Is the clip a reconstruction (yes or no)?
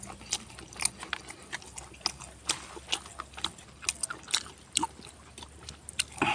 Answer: no